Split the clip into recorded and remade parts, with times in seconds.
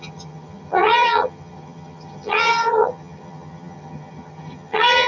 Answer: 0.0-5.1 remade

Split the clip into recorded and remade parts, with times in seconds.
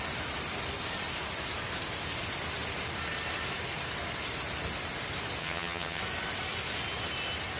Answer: 0.0-5.4 recorded; 5.4-6.0 remade; 6.0-7.6 recorded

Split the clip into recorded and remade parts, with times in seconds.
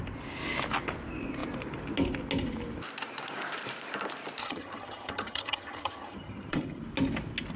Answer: 0.0-4.4 recorded; 4.4-6.8 remade; 6.8-7.6 recorded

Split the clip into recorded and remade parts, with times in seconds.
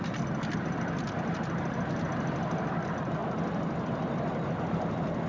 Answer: 0.0-5.3 recorded